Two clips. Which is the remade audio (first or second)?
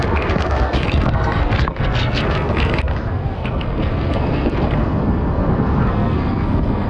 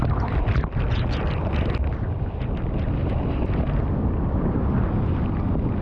first